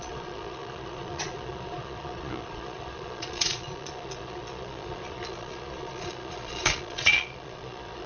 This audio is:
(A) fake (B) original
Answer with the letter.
A